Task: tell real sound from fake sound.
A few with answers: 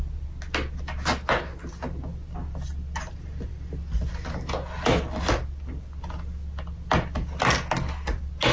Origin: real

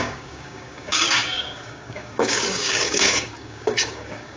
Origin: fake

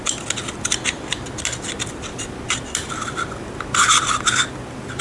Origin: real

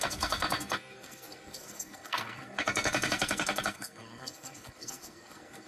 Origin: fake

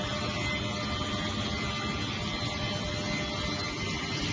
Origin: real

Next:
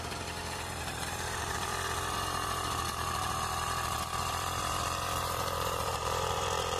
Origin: fake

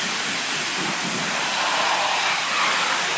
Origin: real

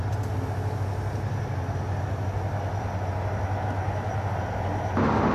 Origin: real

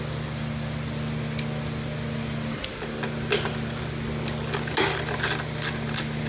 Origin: real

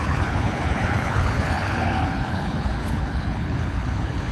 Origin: fake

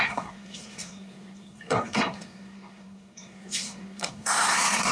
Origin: fake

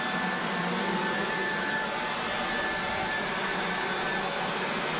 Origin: real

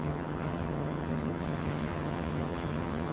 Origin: fake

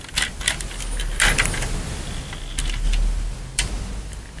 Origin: real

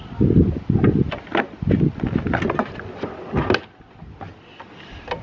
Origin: real